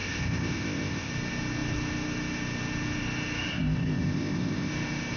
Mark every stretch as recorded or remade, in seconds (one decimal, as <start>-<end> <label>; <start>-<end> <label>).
0.0-1.1 remade; 1.1-3.5 recorded; 3.5-4.7 remade; 4.7-5.2 recorded